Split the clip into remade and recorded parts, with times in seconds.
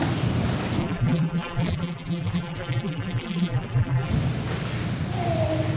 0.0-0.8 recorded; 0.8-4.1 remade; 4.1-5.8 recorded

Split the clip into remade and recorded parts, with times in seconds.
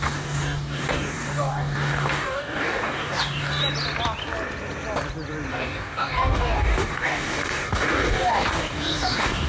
0.0-3.6 remade; 3.6-5.5 recorded; 5.5-9.5 remade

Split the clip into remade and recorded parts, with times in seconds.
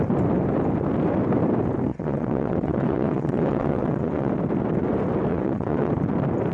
0.0-1.9 recorded; 1.9-4.3 remade; 4.3-5.3 recorded; 5.3-5.9 remade; 5.9-6.5 recorded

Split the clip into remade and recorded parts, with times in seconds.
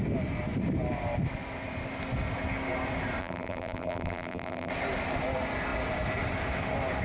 0.0-3.2 recorded; 3.2-4.7 remade; 4.7-7.0 recorded